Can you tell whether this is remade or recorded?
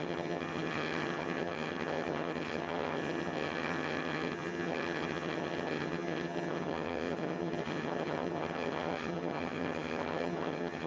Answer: remade